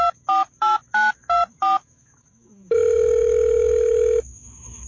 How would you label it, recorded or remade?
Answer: remade